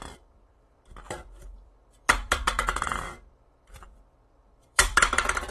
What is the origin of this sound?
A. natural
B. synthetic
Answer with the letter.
B